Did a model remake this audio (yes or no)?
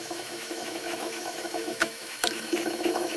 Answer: yes